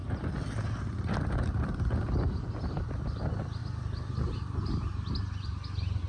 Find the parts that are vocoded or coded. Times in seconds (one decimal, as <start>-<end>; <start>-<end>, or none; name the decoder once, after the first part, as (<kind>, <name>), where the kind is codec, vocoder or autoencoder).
none

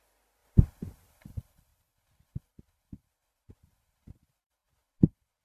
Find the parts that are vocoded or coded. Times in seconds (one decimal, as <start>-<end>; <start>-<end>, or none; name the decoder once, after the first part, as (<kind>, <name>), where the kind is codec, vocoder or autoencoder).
0.0-0.4 (vocoder, BigVGAN v2); 1.1-4.6

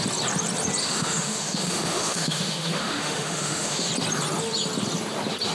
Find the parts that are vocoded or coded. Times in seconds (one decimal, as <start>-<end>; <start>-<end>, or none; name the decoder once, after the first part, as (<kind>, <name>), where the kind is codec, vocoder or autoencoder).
0.8-3.9 (autoencoder, DAC-VAE)

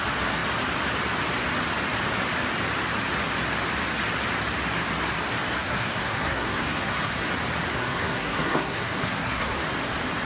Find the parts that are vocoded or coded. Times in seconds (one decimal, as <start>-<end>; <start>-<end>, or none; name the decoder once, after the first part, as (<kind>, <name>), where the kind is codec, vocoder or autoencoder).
5.6-7.3 (codec, SNAC); 7.7-9.6

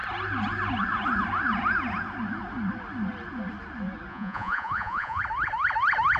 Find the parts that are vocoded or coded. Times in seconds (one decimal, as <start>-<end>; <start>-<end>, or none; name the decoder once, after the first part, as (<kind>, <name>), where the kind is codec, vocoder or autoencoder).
4.1-5.2 (vocoder, Vocos)

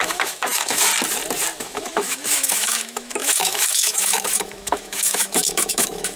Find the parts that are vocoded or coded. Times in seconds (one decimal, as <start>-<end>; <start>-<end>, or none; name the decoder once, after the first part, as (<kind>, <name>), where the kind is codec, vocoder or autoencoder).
0.0-0.9 (autoencoder, DAC-VAE); 1.6-6.2